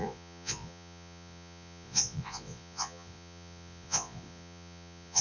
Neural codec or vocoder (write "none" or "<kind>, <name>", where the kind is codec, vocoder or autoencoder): vocoder, Vocos